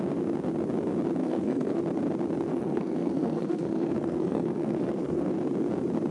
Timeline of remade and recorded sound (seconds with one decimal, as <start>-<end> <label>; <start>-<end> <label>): 0.0-1.2 recorded; 1.2-1.8 remade; 1.8-2.5 recorded; 2.5-5.3 remade; 5.3-6.1 recorded